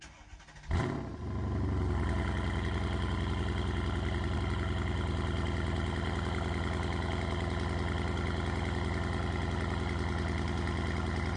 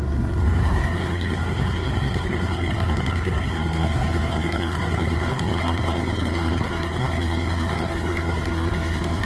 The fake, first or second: second